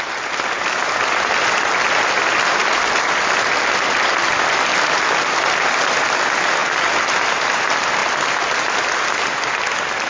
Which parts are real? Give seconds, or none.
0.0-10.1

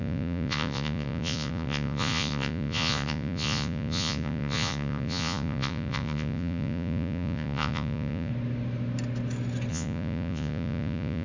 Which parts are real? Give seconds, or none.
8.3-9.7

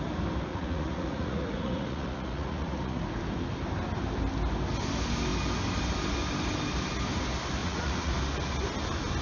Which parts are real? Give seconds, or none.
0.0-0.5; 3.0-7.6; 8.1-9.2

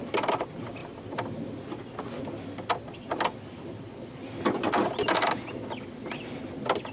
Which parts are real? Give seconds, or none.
0.0-6.9